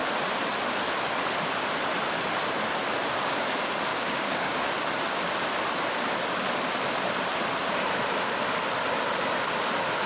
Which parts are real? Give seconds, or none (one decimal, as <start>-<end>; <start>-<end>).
0.0-3.9; 4.7-10.1